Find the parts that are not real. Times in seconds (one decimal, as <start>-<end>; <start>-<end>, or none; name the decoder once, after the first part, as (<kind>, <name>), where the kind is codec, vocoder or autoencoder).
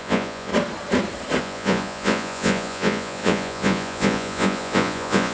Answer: 0.0-0.5 (vocoder, Vocos); 1.4-5.3